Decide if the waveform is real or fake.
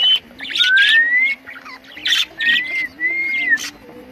real